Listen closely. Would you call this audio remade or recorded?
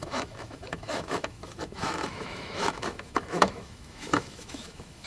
remade